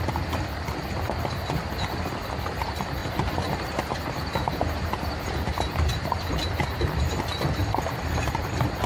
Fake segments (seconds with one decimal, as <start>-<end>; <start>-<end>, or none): 3.0-6.3; 7.6-8.2